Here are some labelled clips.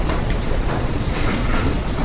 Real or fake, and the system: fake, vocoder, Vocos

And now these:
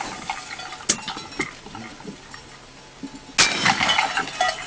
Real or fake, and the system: real